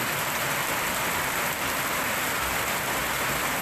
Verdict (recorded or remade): recorded